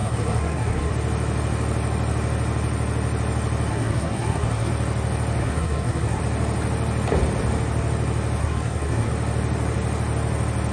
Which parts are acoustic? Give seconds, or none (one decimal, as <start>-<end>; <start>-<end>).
0.9-3.7; 4.7-5.4; 6.2-8.4; 9.1-10.7